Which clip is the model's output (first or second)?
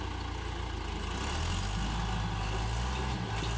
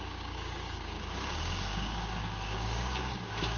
second